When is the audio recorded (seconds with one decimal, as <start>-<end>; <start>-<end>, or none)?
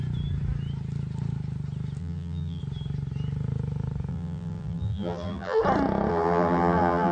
0.0-2.0; 2.6-4.1; 5.6-6.1